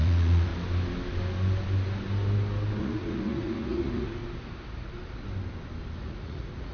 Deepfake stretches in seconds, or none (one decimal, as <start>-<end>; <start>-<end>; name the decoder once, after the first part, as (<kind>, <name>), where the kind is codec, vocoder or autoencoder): 0.0-0.5 (vocoder, Vocos); 2.8-4.2; 6.0-6.7

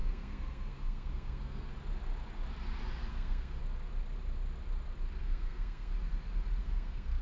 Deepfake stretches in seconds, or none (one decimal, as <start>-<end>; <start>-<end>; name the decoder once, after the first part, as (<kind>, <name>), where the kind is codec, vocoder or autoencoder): 0.0-1.7 (codec, SNAC); 3.1-3.6; 5.2-5.9; 6.6-7.2

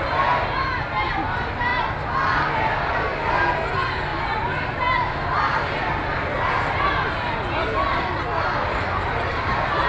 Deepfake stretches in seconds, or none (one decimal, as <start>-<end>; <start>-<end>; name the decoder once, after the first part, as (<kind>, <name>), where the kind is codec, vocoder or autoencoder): none

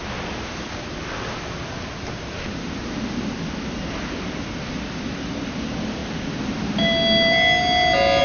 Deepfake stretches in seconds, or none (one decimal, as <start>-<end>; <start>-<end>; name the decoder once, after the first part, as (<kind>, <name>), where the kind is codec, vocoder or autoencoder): none

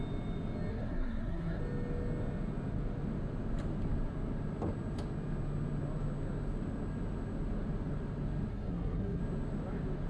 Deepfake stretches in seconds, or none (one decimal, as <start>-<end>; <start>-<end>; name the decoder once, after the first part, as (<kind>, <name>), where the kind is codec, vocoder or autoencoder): 0.7-1.6 (codec, SNAC); 8.5-9.2

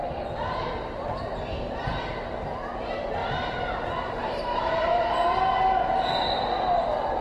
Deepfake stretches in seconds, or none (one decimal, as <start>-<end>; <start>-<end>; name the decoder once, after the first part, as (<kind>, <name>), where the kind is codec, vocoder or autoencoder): 0.0-1.4 (vocoder, BigVGAN v2); 3.2-3.8; 4.2-5.4

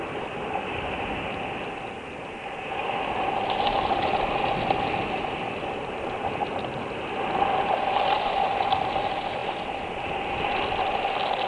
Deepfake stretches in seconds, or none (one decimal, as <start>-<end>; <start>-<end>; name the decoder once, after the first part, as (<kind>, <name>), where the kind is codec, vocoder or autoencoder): none